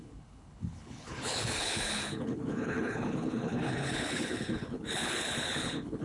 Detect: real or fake fake